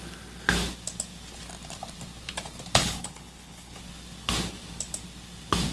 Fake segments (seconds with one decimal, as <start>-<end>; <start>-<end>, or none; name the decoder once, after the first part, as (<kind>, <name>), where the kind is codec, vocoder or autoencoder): 2.8-3.8 (codec, HILCodec)